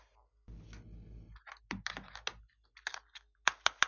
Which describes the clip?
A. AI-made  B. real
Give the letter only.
B